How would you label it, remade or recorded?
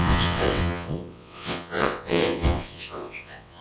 remade